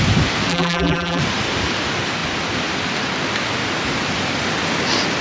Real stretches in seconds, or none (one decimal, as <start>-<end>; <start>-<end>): 0.0-0.5; 1.2-5.2